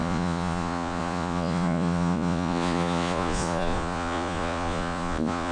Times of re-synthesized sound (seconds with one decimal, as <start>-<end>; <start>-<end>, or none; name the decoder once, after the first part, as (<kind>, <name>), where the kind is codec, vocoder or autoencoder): 0.0-5.5 (vocoder, Vocos)